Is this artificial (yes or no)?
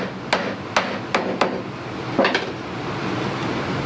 no